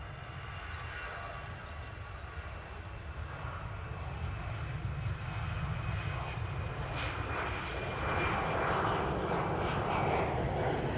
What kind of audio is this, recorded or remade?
recorded